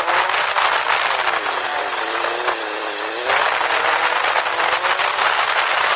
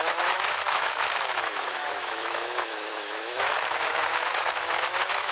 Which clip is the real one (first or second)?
first